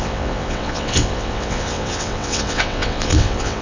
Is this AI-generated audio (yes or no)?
yes